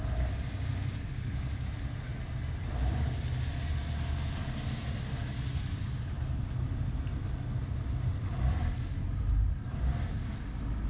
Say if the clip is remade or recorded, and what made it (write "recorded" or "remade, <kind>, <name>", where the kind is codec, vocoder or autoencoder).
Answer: recorded